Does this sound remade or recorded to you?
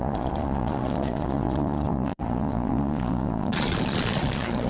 remade